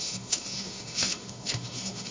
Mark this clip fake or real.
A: fake